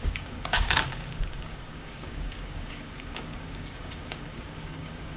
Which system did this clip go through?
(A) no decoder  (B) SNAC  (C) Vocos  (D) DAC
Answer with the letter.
D